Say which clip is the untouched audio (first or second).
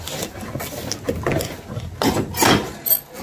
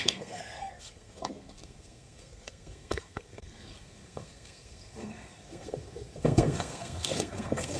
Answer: first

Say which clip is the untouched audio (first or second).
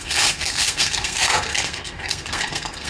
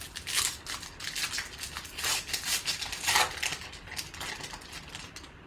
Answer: second